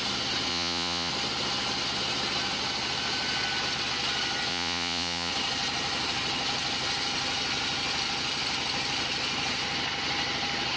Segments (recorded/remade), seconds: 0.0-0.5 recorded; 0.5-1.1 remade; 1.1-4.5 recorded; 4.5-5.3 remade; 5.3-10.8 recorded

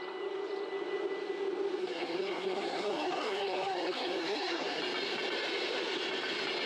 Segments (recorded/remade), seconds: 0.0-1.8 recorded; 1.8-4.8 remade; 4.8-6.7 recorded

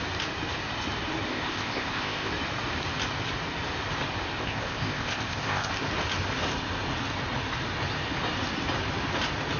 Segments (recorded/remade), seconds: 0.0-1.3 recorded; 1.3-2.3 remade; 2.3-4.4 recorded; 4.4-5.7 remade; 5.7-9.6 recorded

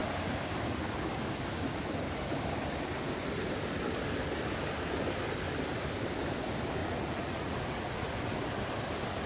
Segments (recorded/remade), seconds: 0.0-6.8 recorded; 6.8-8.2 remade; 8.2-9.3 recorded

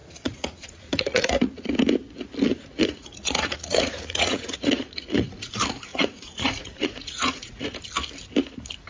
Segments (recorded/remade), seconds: 0.0-1.7 remade; 1.7-2.5 recorded; 2.5-5.5 remade; 5.5-5.9 recorded; 5.9-7.8 remade; 7.8-8.9 recorded